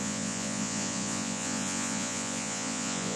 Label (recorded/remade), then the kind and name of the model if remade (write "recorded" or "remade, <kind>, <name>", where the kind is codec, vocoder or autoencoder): remade, vocoder, Vocos